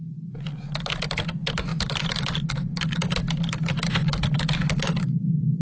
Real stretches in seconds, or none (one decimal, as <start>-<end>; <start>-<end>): 0.0-5.6